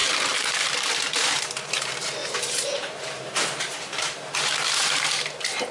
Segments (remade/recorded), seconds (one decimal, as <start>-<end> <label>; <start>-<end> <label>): 0.0-1.5 remade; 1.5-2.2 recorded; 2.2-5.0 remade; 5.0-5.7 recorded